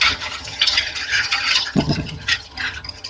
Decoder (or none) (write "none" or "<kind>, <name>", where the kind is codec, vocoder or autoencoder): vocoder, HiFi-GAN